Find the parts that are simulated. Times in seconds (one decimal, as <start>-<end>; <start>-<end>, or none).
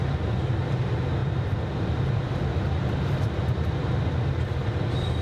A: none